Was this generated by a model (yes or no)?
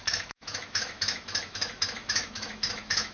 yes